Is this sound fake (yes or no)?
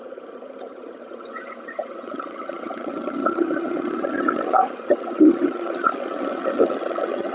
yes